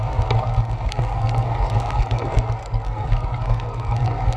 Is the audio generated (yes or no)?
yes